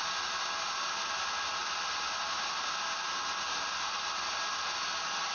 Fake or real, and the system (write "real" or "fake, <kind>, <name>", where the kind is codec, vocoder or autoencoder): real